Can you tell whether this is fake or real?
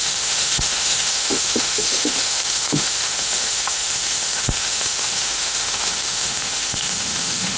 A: fake